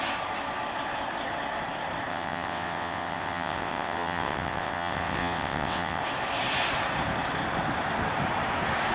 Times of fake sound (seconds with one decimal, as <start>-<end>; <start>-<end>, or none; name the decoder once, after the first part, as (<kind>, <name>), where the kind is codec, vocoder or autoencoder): 2.1-6.0 (vocoder, WaveNeXt)

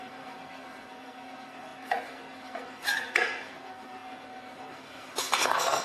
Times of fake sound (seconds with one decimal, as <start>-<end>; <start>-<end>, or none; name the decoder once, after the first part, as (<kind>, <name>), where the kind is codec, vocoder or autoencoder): 0.0-5.8 (codec, SNAC)

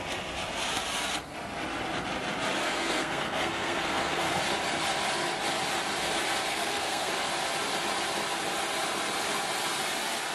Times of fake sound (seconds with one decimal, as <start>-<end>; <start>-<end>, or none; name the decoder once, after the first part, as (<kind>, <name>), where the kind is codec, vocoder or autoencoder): 2.6-4.4 (codec, SNAC); 6.5-7.1

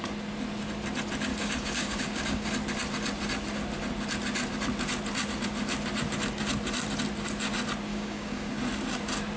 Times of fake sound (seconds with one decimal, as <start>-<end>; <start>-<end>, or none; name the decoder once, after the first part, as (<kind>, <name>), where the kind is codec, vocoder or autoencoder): 1.3-2.5 (codec, DAC); 7.9-8.5

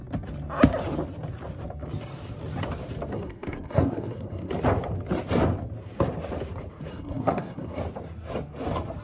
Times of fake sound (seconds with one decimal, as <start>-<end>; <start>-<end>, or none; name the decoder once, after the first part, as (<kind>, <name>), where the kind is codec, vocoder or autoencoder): 3.1-4.5 (codec, SNAC); 6.9-7.8

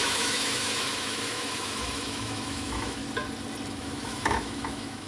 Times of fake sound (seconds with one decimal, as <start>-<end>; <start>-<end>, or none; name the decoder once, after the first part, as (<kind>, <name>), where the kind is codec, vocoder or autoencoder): 0.0-3.0 (autoencoder, DAC-VAE); 3.7-5.1

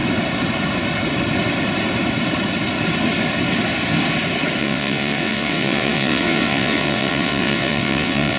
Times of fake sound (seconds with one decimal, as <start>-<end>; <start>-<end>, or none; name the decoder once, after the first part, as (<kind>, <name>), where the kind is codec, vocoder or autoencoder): 4.6-8.4 (vocoder, WaveNeXt)